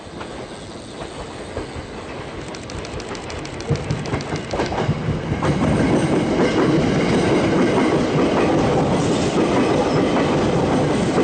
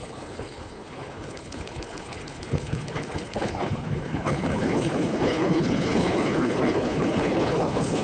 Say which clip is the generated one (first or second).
second